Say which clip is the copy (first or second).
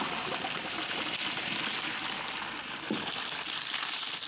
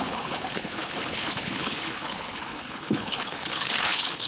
second